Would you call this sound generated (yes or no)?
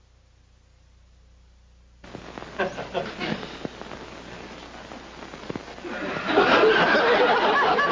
no